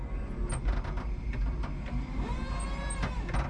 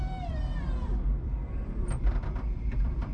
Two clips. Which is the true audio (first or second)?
first